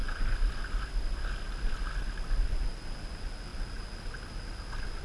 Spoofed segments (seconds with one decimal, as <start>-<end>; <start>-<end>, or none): none